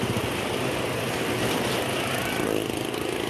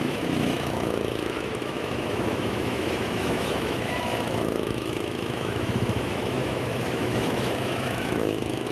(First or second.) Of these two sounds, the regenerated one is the second